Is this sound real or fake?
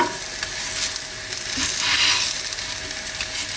real